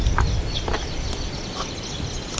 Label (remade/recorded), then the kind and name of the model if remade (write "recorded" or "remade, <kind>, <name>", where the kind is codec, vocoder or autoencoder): recorded